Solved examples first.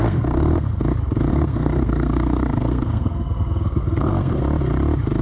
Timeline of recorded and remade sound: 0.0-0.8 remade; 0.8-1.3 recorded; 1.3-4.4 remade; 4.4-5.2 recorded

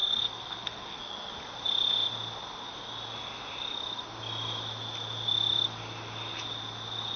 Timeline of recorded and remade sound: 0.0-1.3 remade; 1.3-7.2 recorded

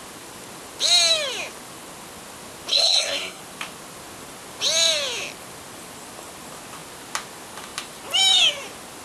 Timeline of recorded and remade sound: 0.0-2.7 recorded; 2.7-3.4 remade; 3.4-9.0 recorded

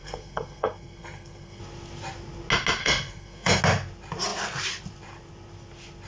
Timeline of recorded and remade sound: 0.0-1.6 remade; 1.6-2.8 recorded; 2.8-3.6 remade; 3.6-6.1 recorded

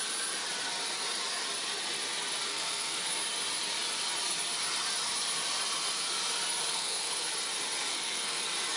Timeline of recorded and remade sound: 0.0-2.5 recorded; 2.5-3.0 remade; 3.0-6.6 recorded; 6.6-7.3 remade; 7.3-7.9 recorded; 7.9-8.4 remade; 8.4-8.8 recorded

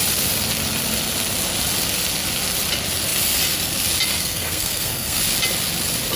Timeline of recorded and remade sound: 0.0-4.2 recorded; 4.2-5.2 remade; 5.2-6.2 recorded

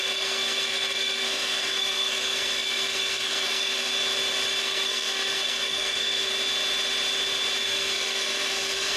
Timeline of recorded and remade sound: 0.0-3.9 remade; 3.9-4.6 recorded; 4.6-6.3 remade; 6.3-7.6 recorded; 7.6-9.0 remade